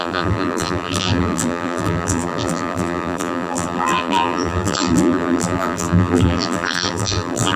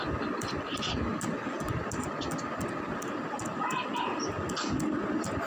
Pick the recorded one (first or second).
second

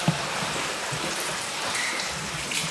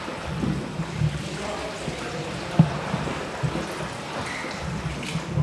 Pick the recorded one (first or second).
second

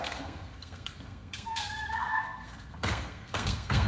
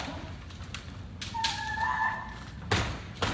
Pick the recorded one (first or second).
second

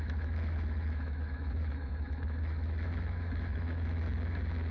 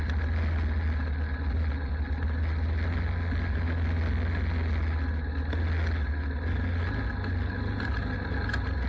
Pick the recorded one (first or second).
second